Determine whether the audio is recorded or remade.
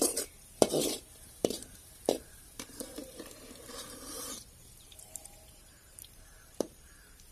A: remade